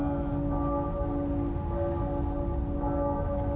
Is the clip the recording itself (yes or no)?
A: yes